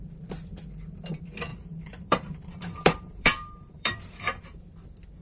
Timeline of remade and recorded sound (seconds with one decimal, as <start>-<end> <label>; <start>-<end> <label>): 0.0-1.5 recorded; 1.5-4.6 remade; 4.6-5.2 recorded